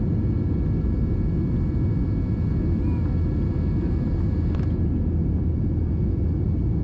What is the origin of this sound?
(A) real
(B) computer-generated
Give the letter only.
A